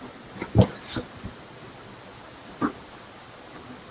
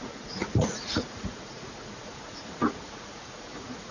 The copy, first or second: second